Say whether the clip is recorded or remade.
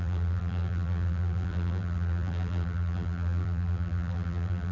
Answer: remade